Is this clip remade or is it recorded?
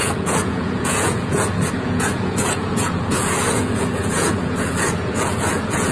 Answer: remade